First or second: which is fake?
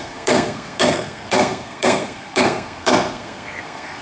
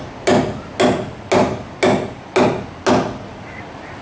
first